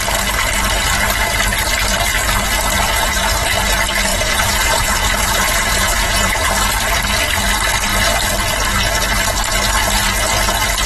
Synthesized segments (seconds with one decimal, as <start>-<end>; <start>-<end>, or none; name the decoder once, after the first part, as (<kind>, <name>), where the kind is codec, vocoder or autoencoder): 4.1-6.5 (vocoder, Vocos)